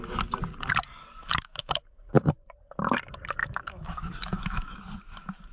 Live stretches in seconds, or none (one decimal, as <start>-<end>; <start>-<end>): 0.0-1.2; 1.8-3.4; 4.8-5.5